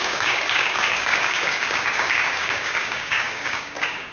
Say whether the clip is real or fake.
fake